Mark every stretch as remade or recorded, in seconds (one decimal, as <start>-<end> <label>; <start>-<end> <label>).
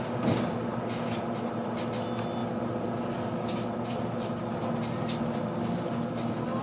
0.0-6.6 recorded